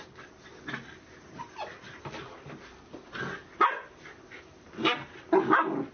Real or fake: real